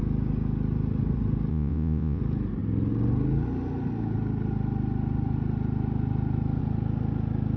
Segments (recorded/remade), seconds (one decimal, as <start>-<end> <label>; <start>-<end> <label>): 0.0-1.5 recorded; 1.5-2.2 remade; 2.2-7.6 recorded